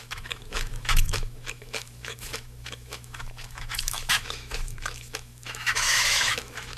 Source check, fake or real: fake